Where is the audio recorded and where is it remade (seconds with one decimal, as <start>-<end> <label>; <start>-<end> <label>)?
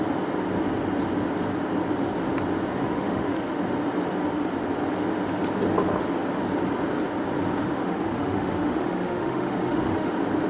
0.0-2.8 recorded; 2.8-3.6 remade; 3.6-7.6 recorded; 7.6-10.1 remade; 10.1-10.5 recorded